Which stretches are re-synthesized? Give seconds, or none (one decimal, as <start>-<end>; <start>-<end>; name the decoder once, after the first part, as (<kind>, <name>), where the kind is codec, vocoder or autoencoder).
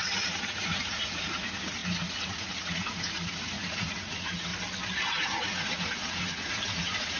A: 0.0-4.5 (vocoder, Vocos); 5.1-7.2